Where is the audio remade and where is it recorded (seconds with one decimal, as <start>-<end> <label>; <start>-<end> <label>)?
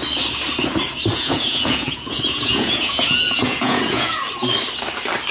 0.0-1.1 recorded; 1.1-4.3 remade; 4.3-5.3 recorded